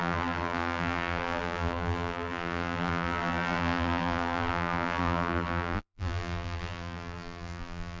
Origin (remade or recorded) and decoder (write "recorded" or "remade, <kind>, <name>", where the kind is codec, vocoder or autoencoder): remade, vocoder, BigVGAN v2